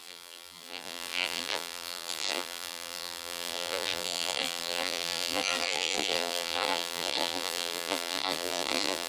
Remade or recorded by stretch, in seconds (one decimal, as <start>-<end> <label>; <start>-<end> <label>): 0.0-9.1 remade